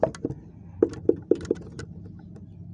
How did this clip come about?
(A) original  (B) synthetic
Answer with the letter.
A